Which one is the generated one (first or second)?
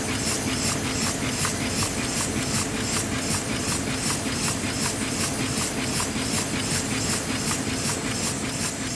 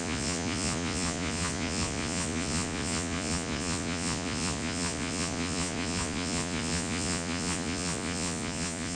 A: second